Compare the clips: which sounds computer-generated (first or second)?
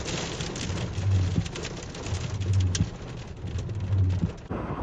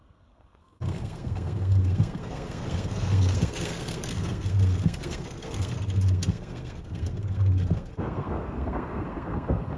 second